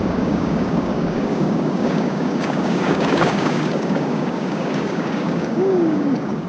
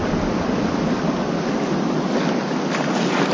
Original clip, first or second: second